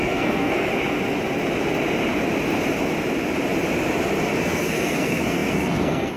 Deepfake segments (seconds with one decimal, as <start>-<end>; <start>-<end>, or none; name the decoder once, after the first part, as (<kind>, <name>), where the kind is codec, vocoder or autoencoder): 0.0-0.7 (codec, SNAC); 4.4-6.2